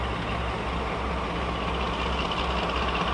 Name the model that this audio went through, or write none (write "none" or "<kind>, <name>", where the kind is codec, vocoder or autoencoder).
none